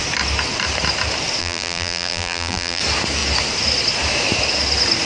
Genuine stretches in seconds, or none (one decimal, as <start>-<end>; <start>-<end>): 0.0-1.4; 2.8-5.0

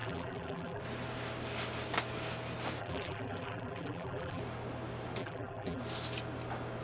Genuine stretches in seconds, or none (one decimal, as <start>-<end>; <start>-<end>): 0.8-2.8; 4.4-5.2; 5.8-6.8

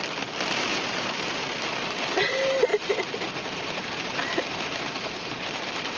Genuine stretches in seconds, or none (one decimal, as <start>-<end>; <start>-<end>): 0.0-0.7; 1.6-2.7

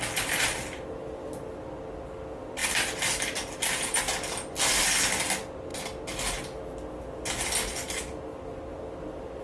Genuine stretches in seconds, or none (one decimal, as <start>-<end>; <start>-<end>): 0.0-2.6; 4.0-8.7

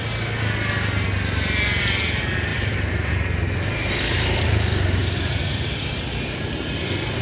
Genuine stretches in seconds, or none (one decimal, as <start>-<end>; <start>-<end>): 0.0-2.5; 4.0-5.0; 5.9-7.2

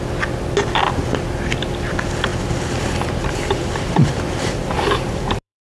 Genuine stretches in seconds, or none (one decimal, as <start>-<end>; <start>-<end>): 0.0-2.3